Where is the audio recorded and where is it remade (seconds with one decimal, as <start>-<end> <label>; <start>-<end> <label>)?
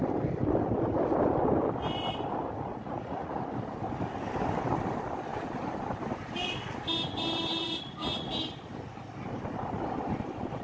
0.0-2.7 recorded; 2.7-3.4 remade; 3.4-7.6 recorded; 7.6-8.3 remade; 8.3-10.6 recorded